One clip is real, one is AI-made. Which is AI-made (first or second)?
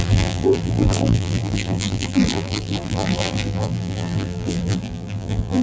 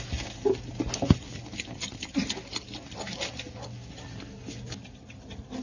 first